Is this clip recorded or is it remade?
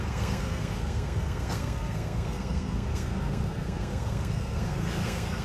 remade